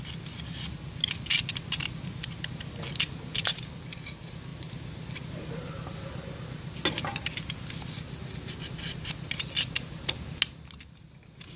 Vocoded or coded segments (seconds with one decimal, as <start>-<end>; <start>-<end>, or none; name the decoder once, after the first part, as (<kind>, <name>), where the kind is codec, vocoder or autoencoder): none

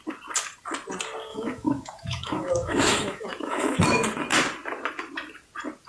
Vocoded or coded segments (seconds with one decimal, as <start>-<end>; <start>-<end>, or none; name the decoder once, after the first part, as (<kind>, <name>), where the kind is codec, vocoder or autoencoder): 1.3-3.8 (autoencoder, DAC-VAE)

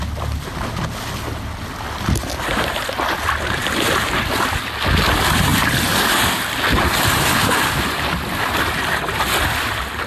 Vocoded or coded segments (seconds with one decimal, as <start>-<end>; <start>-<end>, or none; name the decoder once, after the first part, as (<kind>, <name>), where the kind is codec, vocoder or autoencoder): none

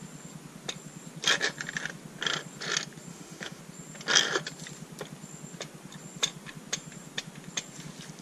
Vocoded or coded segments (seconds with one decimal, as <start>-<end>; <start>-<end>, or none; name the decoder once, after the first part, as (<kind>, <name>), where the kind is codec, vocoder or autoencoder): 3.1-3.6 (autoencoder, DAC-VAE)